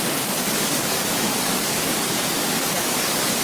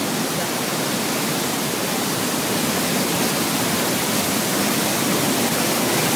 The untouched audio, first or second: second